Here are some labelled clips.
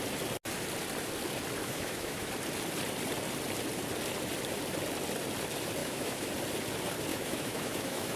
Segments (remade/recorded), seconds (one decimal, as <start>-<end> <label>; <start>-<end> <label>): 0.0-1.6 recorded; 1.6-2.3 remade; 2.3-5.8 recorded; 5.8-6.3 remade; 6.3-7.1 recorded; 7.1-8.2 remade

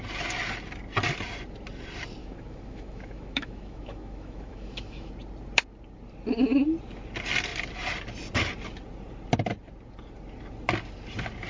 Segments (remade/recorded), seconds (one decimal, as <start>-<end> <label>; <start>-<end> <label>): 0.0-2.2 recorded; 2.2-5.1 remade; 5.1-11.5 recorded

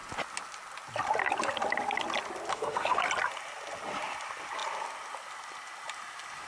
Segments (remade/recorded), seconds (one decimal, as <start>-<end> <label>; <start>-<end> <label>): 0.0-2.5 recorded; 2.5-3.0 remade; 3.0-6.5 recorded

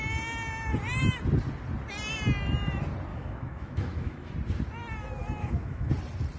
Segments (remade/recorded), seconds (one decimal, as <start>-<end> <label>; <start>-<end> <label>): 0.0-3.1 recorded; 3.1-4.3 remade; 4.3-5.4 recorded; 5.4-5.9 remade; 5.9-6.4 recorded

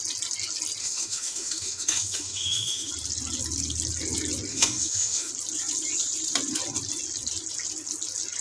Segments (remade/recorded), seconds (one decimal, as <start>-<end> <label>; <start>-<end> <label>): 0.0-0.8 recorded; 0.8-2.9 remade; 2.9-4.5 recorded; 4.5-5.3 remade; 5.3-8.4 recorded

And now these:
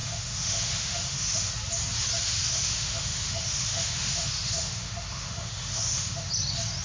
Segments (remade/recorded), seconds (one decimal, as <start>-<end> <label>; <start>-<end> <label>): 0.0-1.5 remade; 1.5-2.2 recorded; 2.2-6.3 remade; 6.3-6.8 recorded

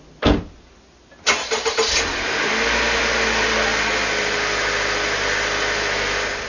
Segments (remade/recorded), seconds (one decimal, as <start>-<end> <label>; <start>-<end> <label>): 0.0-6.5 recorded